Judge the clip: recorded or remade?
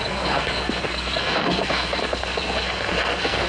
remade